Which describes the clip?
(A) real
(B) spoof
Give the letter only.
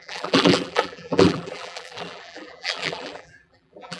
B